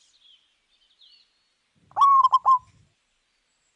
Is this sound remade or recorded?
recorded